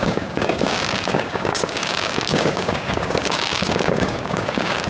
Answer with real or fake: fake